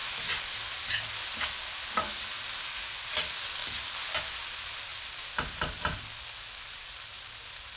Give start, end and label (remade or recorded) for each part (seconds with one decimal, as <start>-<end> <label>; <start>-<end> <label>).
0.0-7.8 recorded